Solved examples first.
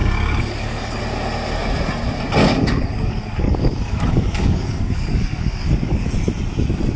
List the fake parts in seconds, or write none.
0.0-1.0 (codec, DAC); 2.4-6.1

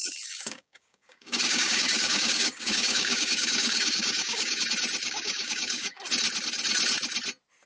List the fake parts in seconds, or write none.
0.0-4.6 (codec, DAC); 5.0-6.0

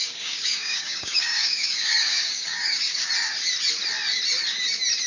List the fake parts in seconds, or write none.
0.0-3.1 (codec, DAC)

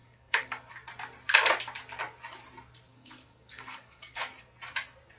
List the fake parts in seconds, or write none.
0.0-0.7 (codec, DAC); 2.9-4.2